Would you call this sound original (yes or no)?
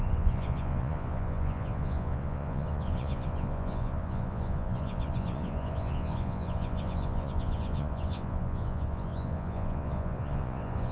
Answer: no